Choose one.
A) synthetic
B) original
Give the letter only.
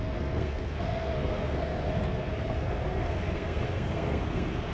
A